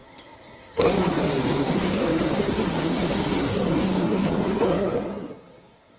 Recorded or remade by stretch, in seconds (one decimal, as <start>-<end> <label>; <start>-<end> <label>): 0.0-6.0 remade